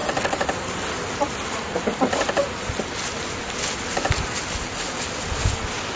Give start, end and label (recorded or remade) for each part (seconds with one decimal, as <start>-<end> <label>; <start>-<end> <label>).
0.0-6.0 recorded